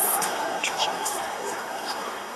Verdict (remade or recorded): remade